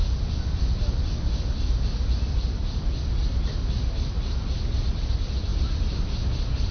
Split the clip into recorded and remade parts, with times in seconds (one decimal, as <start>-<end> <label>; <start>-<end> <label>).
0.0-0.6 remade; 0.6-2.4 recorded; 2.4-3.0 remade; 3.0-5.5 recorded; 5.5-6.3 remade; 6.3-6.7 recorded